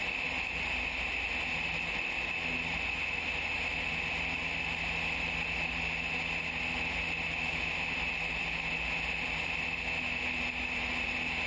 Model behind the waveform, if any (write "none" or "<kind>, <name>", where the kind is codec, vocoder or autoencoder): none